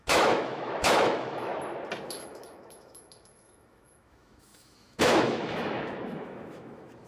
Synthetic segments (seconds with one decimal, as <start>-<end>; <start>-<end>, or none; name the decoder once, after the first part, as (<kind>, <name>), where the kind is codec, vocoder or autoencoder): 0.0-1.5 (autoencoder, DAC-VAE); 2.1-7.1